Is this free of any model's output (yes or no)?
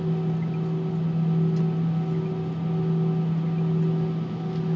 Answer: yes